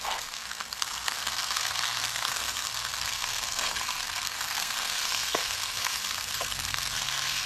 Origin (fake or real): fake